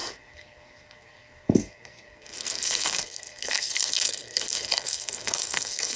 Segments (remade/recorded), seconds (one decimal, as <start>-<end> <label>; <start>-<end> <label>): 0.0-6.0 remade